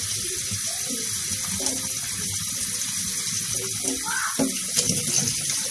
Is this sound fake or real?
real